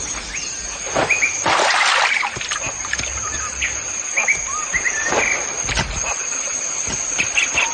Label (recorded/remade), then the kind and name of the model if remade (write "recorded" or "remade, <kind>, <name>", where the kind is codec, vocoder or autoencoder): recorded